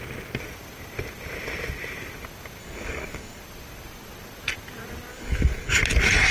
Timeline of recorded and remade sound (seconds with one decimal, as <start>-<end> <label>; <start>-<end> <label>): 0.0-2.6 recorded; 2.6-3.4 remade; 3.4-5.1 recorded; 5.1-5.8 remade; 5.8-6.3 recorded

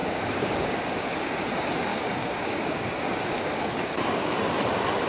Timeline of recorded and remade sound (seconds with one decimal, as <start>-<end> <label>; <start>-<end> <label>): 0.0-1.3 remade; 1.3-1.9 recorded; 1.9-4.3 remade; 4.3-5.1 recorded

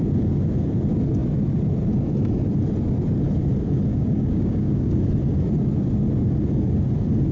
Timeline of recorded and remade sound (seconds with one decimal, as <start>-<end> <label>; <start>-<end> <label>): 0.0-3.9 recorded; 3.9-5.0 remade; 5.0-7.3 recorded

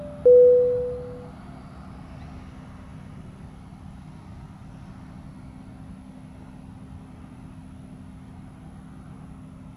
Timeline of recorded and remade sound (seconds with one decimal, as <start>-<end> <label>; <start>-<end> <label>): 0.0-9.8 recorded

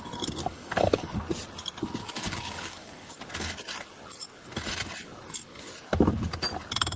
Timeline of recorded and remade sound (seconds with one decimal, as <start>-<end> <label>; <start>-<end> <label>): 0.0-0.4 recorded; 0.4-1.2 remade; 1.2-2.0 recorded; 2.0-3.2 remade; 3.2-7.0 recorded